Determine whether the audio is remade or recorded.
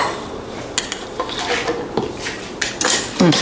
recorded